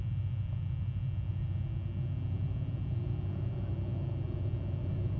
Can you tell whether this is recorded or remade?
recorded